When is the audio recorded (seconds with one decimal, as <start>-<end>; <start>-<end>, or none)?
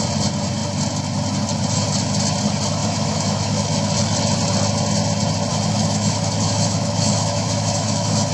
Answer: 0.0-2.8; 3.9-5.5